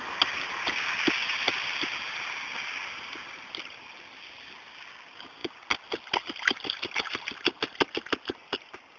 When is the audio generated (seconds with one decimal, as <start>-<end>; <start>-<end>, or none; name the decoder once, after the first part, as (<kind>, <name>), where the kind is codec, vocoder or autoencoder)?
none